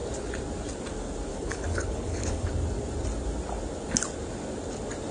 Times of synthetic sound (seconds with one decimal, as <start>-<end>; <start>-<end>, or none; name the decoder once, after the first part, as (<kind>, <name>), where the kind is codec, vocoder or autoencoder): 1.3-2.5 (codec, HILCodec)